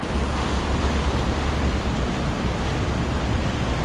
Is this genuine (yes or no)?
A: yes